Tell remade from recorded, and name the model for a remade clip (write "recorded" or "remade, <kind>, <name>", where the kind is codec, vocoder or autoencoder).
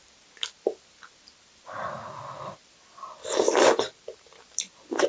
recorded